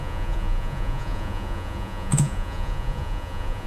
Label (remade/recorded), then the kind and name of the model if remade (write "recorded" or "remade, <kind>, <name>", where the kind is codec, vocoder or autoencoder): remade, vocoder, Vocos